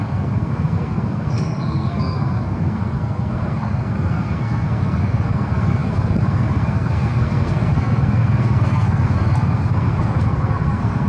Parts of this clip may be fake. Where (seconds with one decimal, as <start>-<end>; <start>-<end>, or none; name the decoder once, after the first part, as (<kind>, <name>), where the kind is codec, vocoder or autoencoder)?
0.0-11.1 (codec, SNAC)